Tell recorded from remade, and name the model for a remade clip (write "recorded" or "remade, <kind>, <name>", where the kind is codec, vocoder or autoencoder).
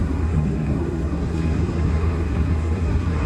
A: remade, codec, SNAC